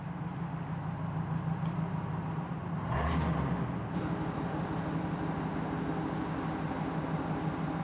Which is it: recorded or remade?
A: recorded